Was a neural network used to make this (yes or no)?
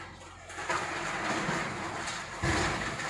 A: yes